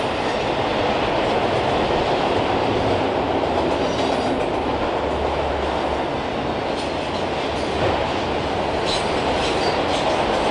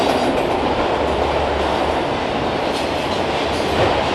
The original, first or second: first